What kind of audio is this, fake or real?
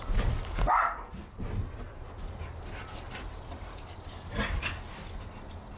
real